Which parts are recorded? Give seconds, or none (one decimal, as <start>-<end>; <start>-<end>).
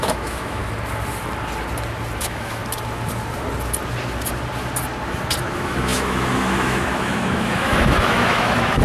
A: 0.6-2.2; 2.6-5.4